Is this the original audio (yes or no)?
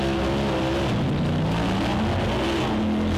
yes